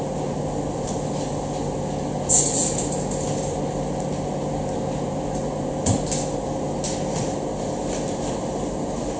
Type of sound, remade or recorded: recorded